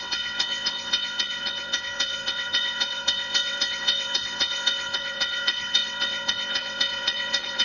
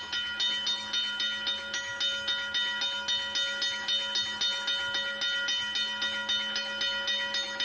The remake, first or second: first